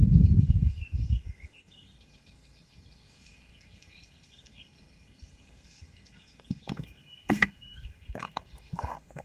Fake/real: fake